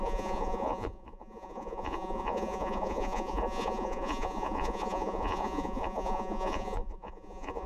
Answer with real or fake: fake